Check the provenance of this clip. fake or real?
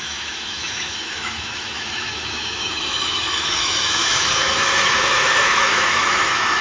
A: fake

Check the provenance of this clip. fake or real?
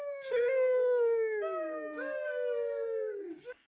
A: fake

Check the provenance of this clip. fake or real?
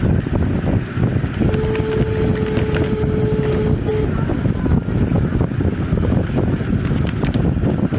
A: real